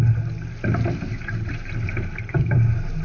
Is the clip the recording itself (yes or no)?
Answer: yes